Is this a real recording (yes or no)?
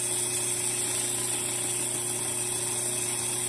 yes